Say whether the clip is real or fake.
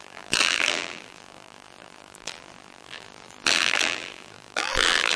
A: fake